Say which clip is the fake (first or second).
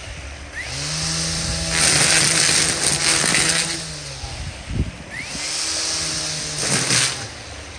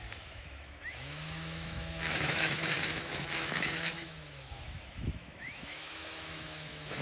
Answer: second